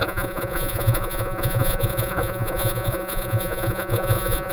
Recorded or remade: remade